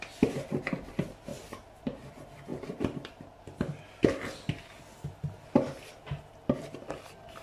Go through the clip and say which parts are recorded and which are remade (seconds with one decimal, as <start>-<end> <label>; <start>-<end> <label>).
0.0-1.3 recorded; 1.3-2.1 remade; 2.1-2.5 recorded; 2.5-3.8 remade; 3.8-7.4 recorded

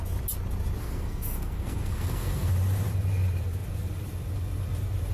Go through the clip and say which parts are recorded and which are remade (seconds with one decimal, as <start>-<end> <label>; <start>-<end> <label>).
0.0-0.8 recorded; 0.8-2.5 remade; 2.5-5.1 recorded

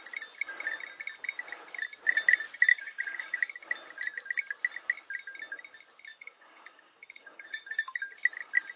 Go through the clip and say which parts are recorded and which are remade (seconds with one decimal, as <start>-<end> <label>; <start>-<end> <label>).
0.0-2.7 recorded; 2.7-3.4 remade; 3.4-6.1 recorded; 6.1-8.0 remade; 8.0-8.8 recorded

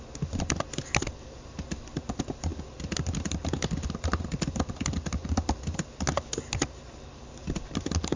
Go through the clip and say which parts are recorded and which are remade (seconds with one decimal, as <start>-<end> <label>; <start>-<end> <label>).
0.0-8.2 recorded

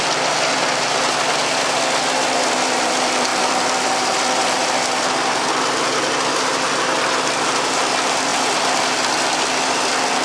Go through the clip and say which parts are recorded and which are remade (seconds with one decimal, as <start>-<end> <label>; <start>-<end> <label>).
0.0-10.2 recorded

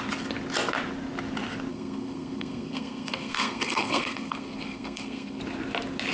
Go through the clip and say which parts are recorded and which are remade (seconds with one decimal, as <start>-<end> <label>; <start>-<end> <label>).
0.0-1.7 recorded; 1.7-5.4 remade; 5.4-6.1 recorded

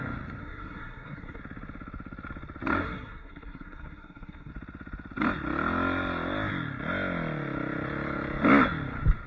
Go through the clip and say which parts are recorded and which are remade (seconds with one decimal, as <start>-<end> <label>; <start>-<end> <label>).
0.0-0.4 recorded; 0.4-1.4 remade; 1.4-2.8 recorded; 2.8-4.5 remade; 4.5-9.3 recorded

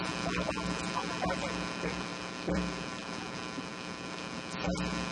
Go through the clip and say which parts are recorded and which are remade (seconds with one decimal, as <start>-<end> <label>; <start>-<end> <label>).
0.0-5.1 recorded